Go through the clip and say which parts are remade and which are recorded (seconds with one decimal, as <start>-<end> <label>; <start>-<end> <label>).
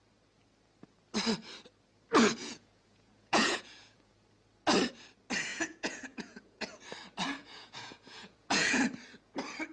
0.0-2.4 recorded; 2.4-4.1 remade; 4.1-5.5 recorded; 5.5-6.8 remade; 6.8-7.4 recorded; 7.4-8.8 remade; 8.8-9.7 recorded